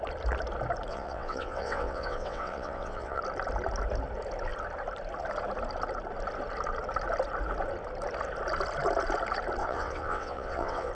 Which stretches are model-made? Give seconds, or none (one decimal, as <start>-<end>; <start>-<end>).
0.9-3.2; 9.6-10.9